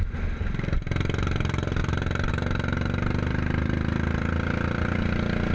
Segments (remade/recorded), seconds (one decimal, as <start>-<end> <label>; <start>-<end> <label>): 0.0-5.5 recorded